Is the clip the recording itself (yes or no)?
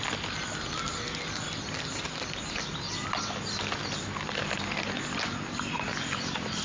yes